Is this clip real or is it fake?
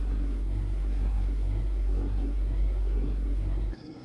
fake